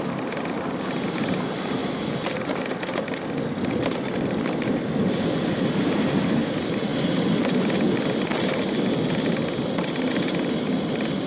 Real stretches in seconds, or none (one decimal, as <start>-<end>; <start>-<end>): 0.0-11.3